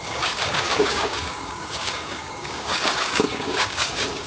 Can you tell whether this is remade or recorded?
remade